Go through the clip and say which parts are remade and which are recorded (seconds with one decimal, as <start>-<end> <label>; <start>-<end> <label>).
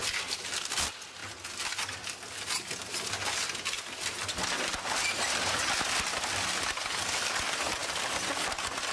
0.0-8.9 recorded